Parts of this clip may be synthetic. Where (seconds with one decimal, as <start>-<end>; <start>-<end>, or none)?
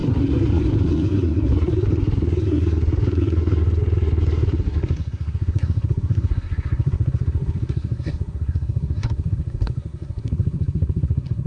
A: 0.0-11.5